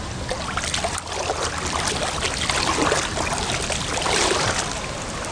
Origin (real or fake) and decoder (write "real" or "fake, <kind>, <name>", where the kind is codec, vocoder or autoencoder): real